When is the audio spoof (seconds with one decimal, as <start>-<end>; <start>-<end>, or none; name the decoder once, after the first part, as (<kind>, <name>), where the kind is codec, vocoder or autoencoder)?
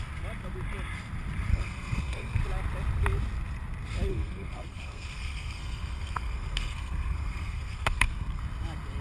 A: 1.5-2.4 (codec, SNAC); 4.1-8.4